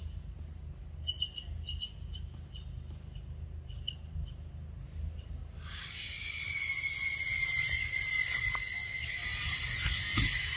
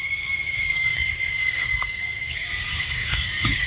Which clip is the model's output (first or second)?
second